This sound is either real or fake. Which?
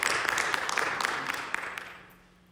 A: real